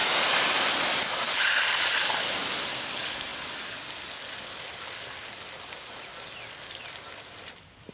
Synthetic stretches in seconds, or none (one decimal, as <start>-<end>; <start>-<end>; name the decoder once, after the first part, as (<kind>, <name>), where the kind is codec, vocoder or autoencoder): none